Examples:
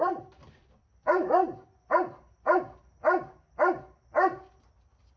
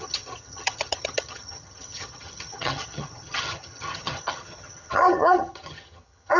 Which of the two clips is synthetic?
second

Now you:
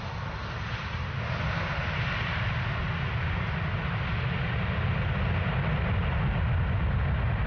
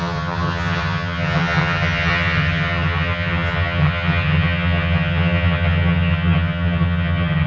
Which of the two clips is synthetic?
second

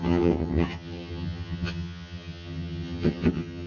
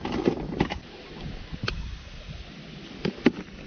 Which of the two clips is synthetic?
first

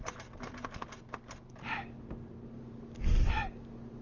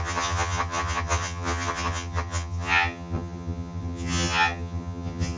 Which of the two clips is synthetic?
second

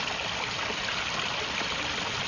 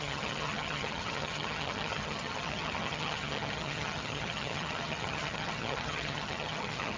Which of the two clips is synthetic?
second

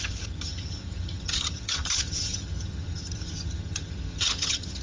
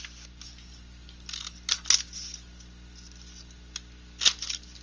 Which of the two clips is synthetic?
first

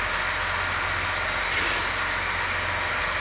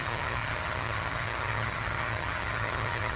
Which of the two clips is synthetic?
second